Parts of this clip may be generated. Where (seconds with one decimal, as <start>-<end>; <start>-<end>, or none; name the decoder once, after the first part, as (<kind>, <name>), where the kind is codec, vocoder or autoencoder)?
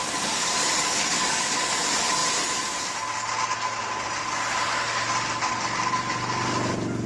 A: 0.6-1.7 (codec, DAC)